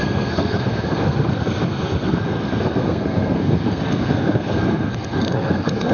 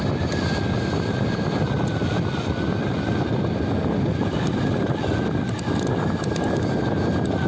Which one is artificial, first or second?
first